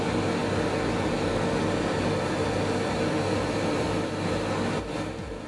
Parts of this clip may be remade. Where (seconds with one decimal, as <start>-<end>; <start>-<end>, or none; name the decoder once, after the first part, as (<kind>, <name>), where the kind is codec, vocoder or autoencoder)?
none